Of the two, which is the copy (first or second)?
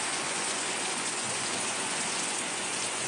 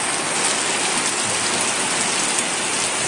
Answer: first